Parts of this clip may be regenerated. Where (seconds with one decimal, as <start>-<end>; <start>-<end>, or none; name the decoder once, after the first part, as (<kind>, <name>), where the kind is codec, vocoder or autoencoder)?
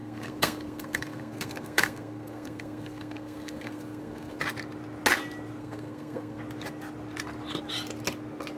0.0-4.4 (codec, SNAC); 5.6-6.4